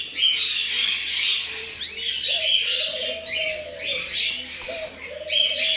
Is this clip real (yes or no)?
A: yes